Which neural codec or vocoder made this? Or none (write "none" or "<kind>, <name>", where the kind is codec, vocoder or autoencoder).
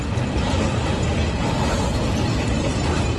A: none